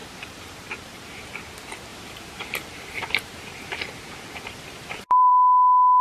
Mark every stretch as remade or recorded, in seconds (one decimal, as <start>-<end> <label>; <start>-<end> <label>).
0.0-1.2 remade; 1.2-1.9 recorded; 1.9-5.3 remade; 5.3-6.0 recorded

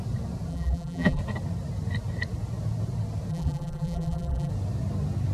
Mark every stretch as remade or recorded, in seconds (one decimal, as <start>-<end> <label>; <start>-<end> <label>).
0.0-0.5 recorded; 0.5-1.2 remade; 1.2-3.3 recorded; 3.3-4.5 remade; 4.5-5.3 recorded

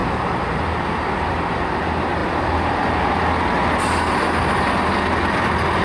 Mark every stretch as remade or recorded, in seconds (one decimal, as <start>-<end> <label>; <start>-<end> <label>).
0.0-1.3 remade; 1.3-5.8 recorded